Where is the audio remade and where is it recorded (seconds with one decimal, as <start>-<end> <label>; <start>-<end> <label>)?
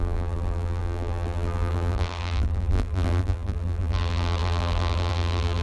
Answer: 0.0-5.6 remade